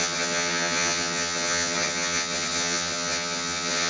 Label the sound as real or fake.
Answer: fake